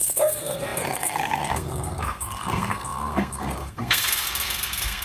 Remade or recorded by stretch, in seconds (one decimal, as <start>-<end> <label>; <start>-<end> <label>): 0.0-5.0 remade